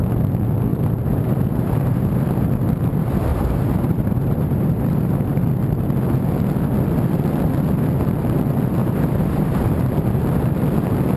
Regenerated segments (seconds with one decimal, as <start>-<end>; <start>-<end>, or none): 0.7-2.3; 3.3-5.4; 8.8-9.6